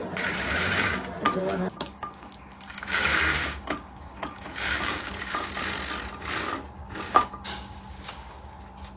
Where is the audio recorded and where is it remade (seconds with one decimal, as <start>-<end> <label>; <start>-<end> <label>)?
0.0-1.4 recorded; 1.4-5.5 remade; 5.5-6.8 recorded; 6.8-8.5 remade; 8.5-9.0 recorded